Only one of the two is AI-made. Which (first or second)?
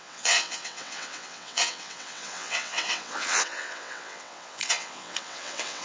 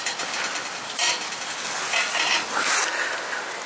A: first